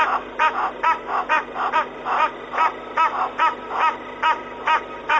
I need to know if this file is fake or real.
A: real